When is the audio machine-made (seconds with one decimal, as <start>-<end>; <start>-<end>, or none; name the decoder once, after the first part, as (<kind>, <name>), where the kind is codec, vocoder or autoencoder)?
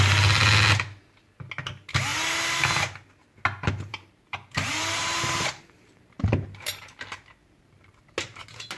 3.9-7.9 (vocoder, BigVGAN v2)